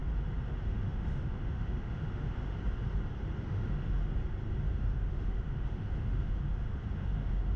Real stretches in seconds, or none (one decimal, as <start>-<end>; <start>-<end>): 0.0-0.5; 2.5-3.4; 4.0-4.7